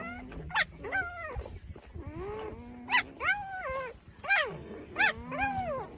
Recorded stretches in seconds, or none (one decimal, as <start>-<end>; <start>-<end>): 0.0-6.0